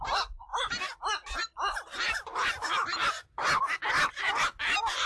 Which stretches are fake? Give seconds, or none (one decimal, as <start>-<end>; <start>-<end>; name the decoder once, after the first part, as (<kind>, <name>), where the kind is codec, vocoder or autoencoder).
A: none